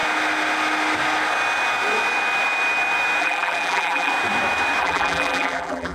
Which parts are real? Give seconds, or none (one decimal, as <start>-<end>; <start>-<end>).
0.0-3.2; 4.1-4.8